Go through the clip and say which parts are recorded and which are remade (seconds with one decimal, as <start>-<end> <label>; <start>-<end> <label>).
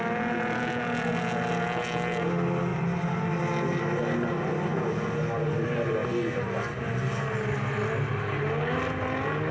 0.0-9.5 recorded